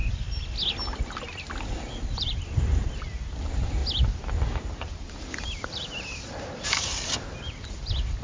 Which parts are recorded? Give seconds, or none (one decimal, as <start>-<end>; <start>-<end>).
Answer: 0.0-2.1; 3.8-5.4